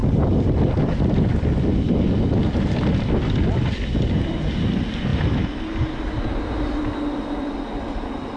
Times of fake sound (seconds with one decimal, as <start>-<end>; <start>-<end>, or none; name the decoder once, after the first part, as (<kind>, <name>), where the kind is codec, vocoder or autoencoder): none